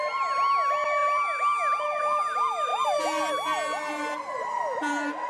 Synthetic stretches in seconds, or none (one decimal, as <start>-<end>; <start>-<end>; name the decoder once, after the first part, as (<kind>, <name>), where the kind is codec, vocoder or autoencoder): none